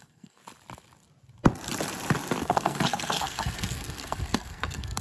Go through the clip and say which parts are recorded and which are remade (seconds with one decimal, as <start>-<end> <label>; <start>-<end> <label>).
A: 0.0-0.4 remade; 0.4-2.4 recorded; 2.4-5.0 remade

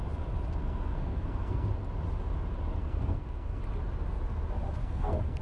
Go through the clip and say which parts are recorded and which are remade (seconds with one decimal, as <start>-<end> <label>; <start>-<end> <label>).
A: 0.0-0.6 recorded; 0.6-1.7 remade; 1.7-2.8 recorded; 2.8-3.6 remade; 3.6-4.8 recorded; 4.8-5.4 remade

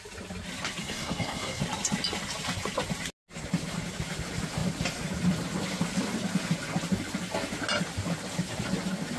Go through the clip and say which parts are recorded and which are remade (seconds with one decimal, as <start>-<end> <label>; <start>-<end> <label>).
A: 0.0-0.8 recorded; 0.8-1.6 remade; 1.6-9.2 recorded